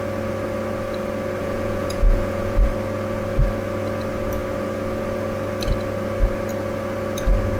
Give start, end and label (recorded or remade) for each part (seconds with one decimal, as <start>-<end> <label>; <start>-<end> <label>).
0.0-1.4 recorded; 1.4-2.7 remade; 2.7-7.6 recorded